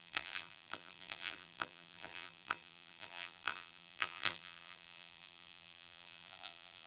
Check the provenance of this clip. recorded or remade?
remade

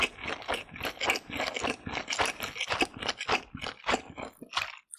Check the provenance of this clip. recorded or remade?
recorded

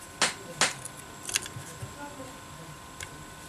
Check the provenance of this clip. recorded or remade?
recorded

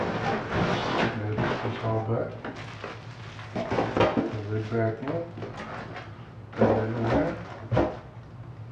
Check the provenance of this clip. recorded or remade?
recorded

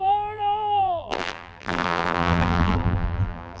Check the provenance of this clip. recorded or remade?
remade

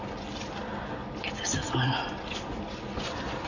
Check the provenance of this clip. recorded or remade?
recorded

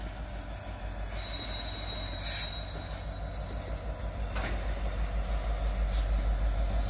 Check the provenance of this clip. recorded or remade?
recorded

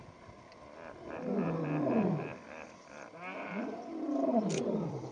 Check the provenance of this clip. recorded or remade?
remade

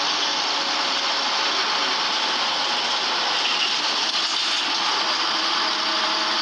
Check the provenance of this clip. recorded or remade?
recorded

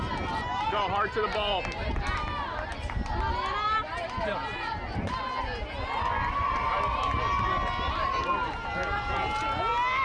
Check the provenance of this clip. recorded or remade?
recorded